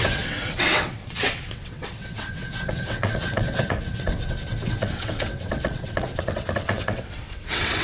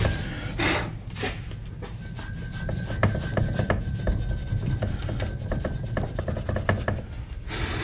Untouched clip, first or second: second